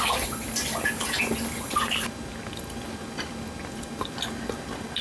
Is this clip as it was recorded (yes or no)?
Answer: yes